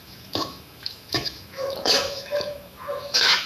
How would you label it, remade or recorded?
remade